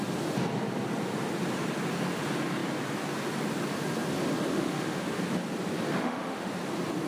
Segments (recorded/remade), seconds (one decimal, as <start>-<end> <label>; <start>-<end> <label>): 0.0-4.5 recorded; 4.5-5.2 remade; 5.2-5.9 recorded; 5.9-6.5 remade; 6.5-7.1 recorded